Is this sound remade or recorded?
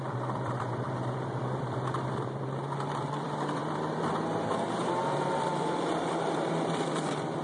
remade